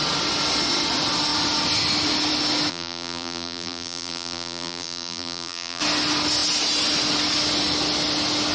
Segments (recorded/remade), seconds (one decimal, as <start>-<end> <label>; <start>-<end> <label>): 0.0-2.7 recorded; 2.7-5.8 remade; 5.8-8.5 recorded